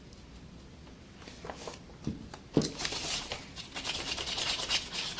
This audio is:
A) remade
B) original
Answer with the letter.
B